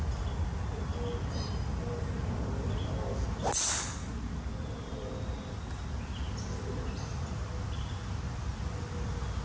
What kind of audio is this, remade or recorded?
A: recorded